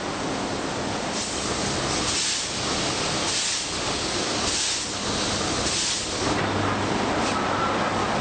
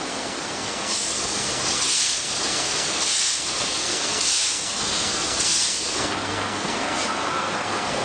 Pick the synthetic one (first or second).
second